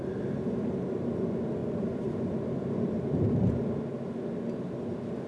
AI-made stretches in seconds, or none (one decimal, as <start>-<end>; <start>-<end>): 1.6-3.1